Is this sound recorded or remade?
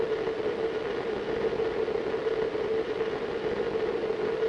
recorded